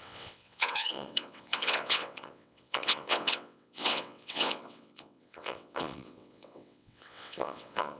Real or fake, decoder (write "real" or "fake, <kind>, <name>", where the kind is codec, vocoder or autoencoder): fake, vocoder, WaveNeXt